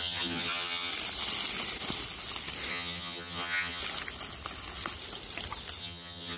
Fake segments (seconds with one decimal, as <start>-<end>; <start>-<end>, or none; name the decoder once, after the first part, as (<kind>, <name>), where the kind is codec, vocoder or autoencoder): 0.0-0.9 (vocoder, HiFi-GAN); 2.7-3.8; 5.8-6.4